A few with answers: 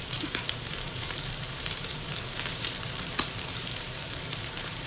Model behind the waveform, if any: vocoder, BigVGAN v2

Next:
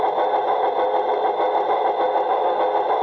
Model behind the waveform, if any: none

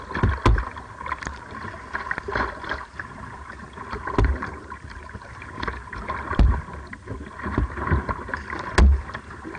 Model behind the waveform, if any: none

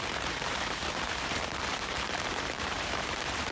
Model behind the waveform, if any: vocoder, BigVGAN v2